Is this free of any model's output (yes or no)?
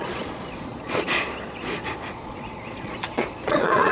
no